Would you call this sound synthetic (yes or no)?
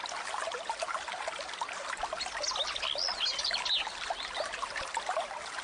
no